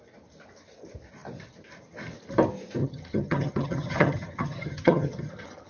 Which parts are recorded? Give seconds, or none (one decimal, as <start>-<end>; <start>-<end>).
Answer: 0.0-2.8